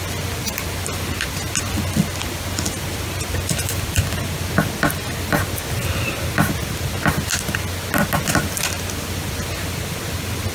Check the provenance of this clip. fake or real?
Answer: real